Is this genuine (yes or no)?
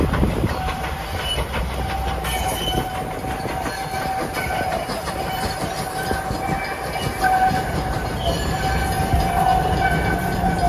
yes